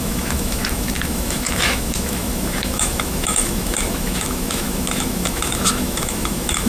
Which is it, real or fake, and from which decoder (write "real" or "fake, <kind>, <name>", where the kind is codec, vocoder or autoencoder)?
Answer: fake, autoencoder, DAC-VAE